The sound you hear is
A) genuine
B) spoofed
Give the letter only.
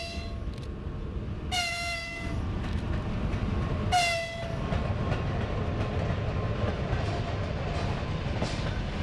A